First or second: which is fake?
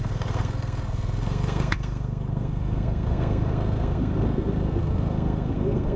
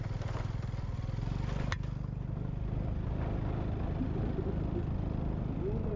first